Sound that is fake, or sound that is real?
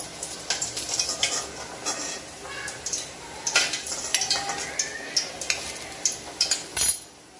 real